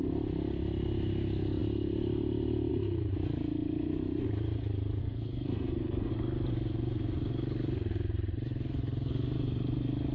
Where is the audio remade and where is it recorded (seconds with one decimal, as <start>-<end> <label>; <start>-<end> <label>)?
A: 0.0-5.0 recorded; 5.0-6.1 remade; 6.1-10.1 recorded